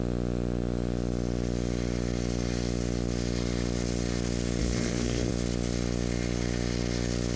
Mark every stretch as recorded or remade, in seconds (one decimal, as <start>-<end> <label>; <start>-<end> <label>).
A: 0.0-4.6 recorded; 4.6-5.3 remade; 5.3-7.4 recorded